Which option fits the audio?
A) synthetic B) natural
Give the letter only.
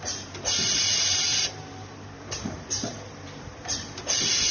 A